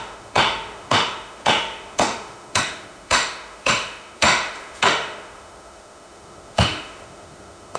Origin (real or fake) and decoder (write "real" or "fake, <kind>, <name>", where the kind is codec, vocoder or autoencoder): fake, autoencoder, DAC-VAE